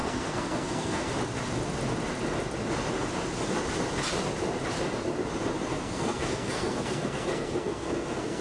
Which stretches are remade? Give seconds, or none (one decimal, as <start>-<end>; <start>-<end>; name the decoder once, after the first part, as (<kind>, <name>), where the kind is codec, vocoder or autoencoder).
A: 0.0-1.1 (codec, SNAC); 5.7-8.4